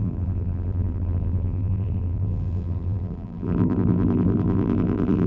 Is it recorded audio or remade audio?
remade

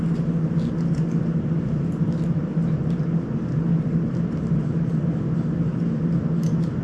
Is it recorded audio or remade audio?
recorded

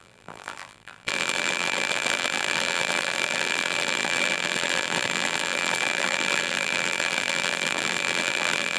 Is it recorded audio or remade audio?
remade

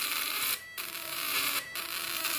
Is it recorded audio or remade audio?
remade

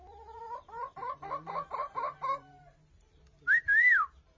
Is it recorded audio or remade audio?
remade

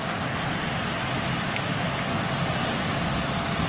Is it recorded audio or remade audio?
remade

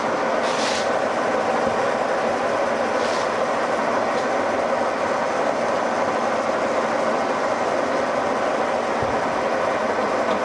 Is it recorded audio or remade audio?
recorded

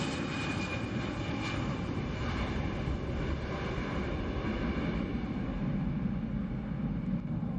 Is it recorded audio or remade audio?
recorded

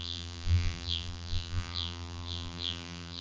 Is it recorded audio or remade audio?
remade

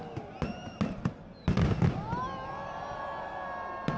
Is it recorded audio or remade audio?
recorded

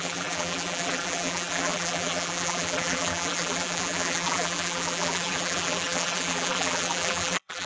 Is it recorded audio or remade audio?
remade